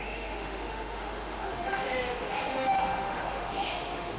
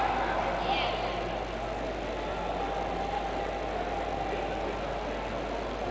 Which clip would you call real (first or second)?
second